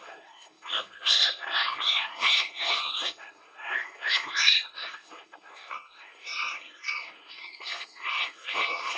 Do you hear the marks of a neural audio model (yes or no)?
yes